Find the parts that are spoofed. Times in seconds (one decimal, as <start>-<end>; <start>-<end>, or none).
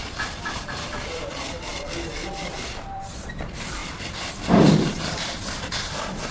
0.0-1.7; 2.5-6.3